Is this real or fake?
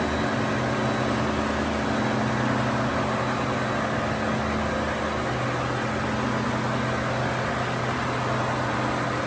real